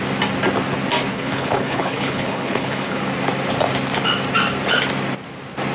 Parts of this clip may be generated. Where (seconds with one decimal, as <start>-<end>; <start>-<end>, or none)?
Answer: 1.1-3.0